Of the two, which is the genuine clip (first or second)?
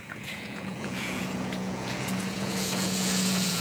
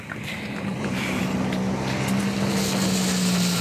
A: second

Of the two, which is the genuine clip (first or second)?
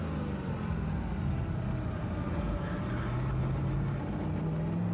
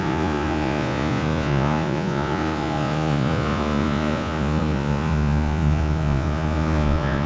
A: first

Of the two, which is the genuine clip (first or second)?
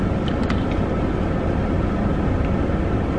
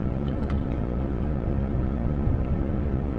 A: first